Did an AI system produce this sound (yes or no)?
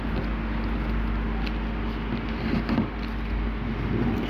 no